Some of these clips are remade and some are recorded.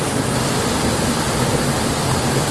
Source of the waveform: recorded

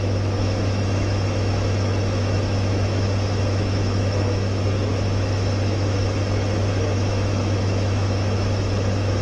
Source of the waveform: remade